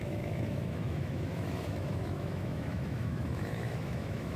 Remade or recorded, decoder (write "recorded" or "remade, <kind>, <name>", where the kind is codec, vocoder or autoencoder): remade, autoencoder, DAC-VAE